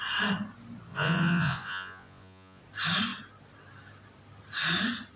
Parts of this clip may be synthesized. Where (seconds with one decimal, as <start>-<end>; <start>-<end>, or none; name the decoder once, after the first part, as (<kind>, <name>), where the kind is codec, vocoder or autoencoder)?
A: 0.9-2.6 (vocoder, Vocos)